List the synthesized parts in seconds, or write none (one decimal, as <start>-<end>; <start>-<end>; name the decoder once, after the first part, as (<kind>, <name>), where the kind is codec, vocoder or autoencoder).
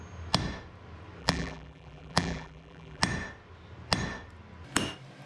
1.2-3.0 (vocoder, BigVGAN v2)